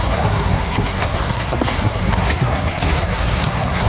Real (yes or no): no